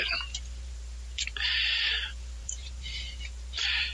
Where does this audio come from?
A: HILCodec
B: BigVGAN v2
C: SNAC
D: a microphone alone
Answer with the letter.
B